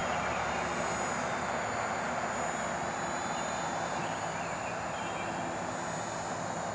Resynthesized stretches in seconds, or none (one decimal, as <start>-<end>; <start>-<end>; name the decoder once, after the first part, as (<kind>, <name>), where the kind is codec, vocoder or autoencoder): none